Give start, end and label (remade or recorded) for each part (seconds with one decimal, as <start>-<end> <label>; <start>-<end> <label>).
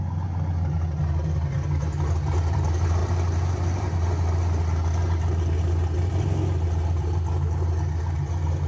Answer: 0.0-8.7 recorded